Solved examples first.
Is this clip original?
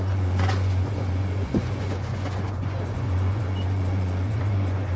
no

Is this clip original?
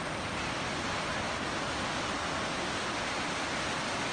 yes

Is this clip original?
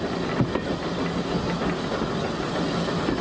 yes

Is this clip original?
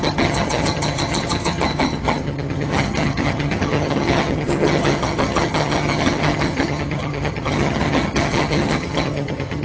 no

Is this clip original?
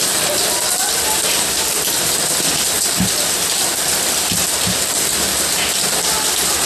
no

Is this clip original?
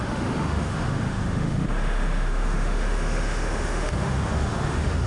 no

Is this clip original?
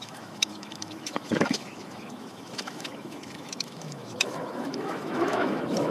no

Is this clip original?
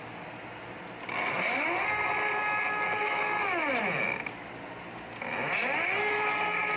yes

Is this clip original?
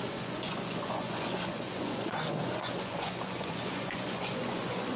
no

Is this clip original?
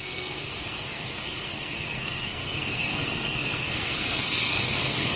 no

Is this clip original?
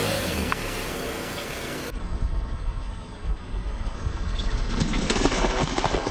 no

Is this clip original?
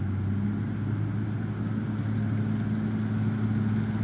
yes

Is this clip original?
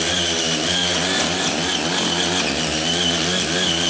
yes